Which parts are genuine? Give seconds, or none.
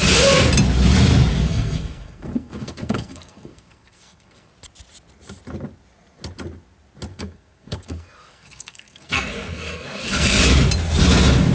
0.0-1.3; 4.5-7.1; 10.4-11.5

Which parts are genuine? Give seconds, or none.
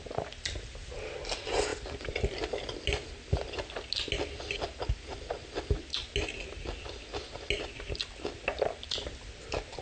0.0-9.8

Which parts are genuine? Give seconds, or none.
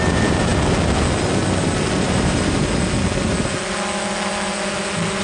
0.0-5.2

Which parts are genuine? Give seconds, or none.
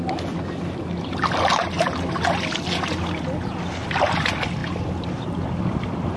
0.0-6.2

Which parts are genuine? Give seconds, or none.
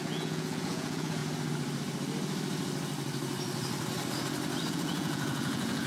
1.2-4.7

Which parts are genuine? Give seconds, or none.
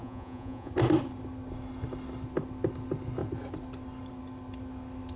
0.7-5.2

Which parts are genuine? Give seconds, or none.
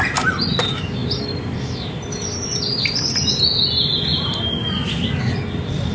0.0-5.9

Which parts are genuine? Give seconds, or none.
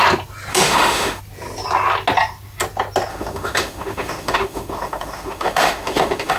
0.0-0.5; 1.2-3.1